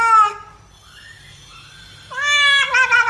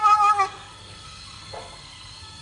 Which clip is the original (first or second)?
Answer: first